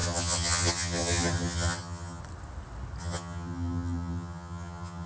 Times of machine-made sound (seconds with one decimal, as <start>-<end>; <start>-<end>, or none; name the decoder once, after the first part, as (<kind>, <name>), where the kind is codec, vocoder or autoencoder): 0.0-2.2 (vocoder, HiFi-GAN); 3.0-5.1